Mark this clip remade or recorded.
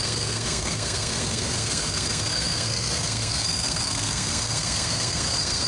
remade